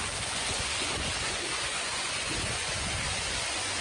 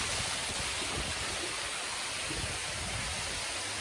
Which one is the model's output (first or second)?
first